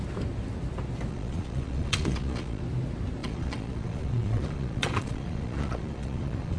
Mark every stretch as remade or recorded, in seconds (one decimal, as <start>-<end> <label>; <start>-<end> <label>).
0.0-1.1 recorded; 1.1-2.6 remade; 2.6-3.2 recorded; 3.2-6.6 remade

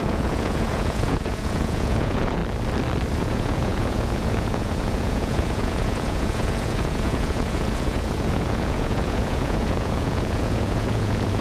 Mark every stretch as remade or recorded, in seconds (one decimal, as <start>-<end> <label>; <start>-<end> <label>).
0.0-2.4 remade; 2.4-3.2 recorded; 3.2-11.4 remade